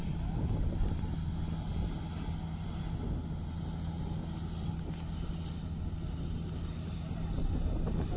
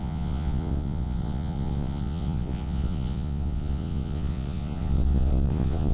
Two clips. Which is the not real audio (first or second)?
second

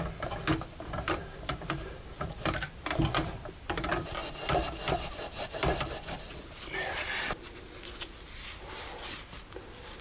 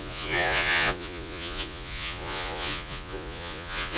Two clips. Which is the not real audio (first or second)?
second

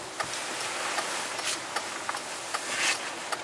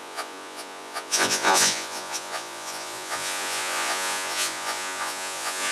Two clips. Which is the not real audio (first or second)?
second